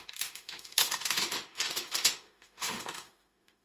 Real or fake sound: fake